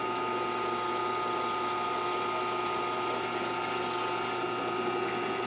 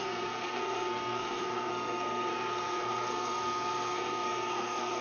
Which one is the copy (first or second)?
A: second